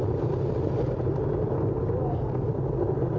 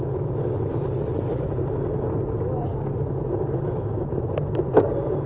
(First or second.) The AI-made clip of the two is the first